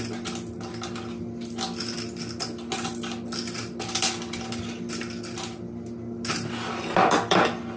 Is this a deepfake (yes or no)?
no